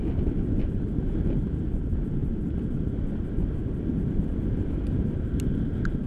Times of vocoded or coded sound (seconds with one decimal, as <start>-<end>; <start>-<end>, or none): 3.6-4.2